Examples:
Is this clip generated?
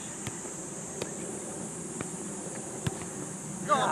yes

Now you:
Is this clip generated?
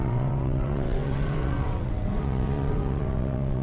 yes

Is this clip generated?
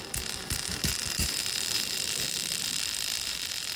no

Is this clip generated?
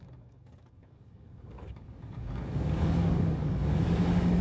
yes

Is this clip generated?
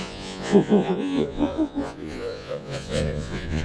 yes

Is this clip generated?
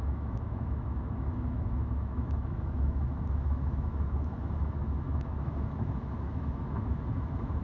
yes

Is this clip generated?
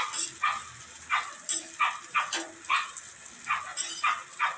no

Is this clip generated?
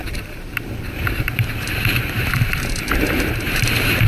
yes